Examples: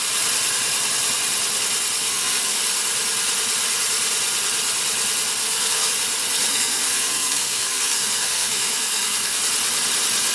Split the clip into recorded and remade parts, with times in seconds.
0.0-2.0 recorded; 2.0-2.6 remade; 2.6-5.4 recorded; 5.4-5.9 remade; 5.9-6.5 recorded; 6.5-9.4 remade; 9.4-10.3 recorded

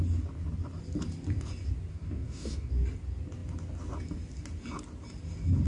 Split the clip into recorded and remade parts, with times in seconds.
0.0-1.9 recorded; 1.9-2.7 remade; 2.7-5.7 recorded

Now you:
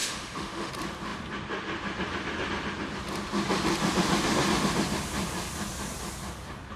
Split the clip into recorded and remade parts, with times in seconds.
0.0-0.7 remade; 0.7-6.8 recorded